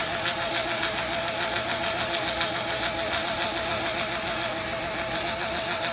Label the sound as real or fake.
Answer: real